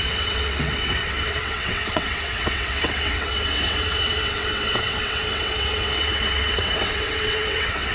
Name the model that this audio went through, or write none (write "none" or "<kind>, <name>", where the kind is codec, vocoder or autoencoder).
vocoder, WaveNeXt